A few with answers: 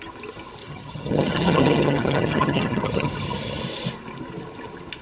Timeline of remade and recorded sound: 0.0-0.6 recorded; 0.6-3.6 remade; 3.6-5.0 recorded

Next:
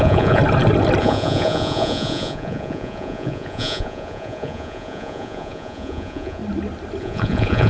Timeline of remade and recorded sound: 0.0-0.4 remade; 0.4-1.0 recorded; 1.0-6.4 remade; 6.4-7.0 recorded; 7.0-7.7 remade